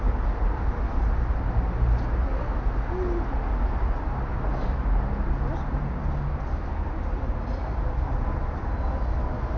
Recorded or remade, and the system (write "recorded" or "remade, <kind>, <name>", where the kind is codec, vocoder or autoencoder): recorded